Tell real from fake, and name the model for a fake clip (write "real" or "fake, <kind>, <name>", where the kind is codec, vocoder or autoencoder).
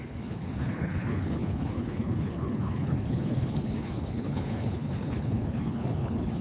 fake, codec, HILCodec